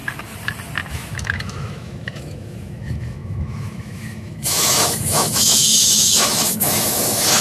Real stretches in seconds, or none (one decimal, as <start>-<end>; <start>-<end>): 0.0-0.9